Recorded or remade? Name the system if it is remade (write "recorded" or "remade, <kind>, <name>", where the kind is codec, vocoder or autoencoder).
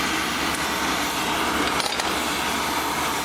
recorded